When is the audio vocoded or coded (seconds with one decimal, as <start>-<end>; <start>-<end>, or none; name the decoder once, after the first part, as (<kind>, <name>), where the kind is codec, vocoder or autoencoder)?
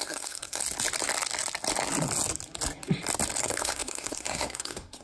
0.0-0.6 (codec, SNAC); 3.4-5.0